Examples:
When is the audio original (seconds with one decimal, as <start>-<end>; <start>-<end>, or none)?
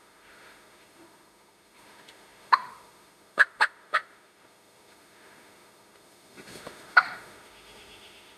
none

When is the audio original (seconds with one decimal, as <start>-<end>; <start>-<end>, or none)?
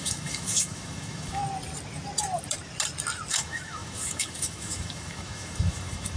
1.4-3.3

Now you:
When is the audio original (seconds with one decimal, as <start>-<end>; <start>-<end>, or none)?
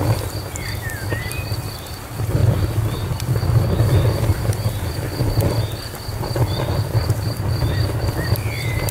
0.0-8.9